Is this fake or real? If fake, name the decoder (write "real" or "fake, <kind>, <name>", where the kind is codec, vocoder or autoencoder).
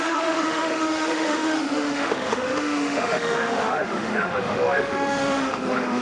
fake, autoencoder, DAC-VAE